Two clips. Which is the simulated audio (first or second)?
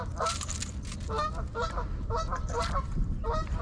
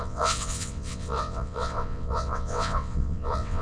second